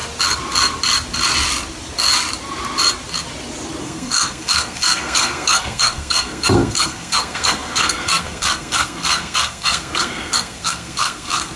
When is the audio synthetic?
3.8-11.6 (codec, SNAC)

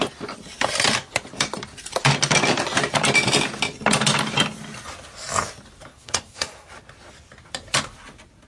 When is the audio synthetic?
5.9-6.7 (codec, SNAC)

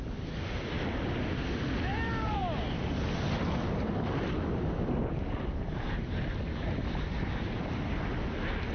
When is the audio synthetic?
none

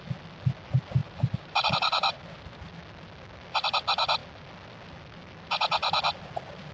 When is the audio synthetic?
1.0-2.6 (vocoder, BigVGAN v2)

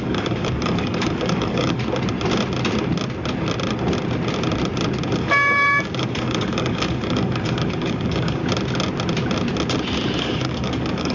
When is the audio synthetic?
0.0-1.8 (codec, DAC); 5.2-8.4; 10.2-11.1

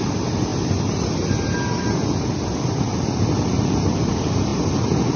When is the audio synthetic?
none

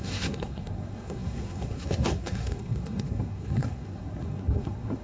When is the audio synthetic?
0.0-5.0 (codec, SNAC)